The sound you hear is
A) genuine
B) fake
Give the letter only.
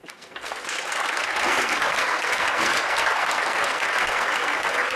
B